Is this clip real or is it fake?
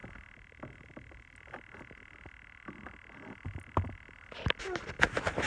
real